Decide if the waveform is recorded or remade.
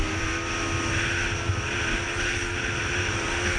recorded